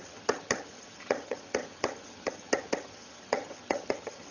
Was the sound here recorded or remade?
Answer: remade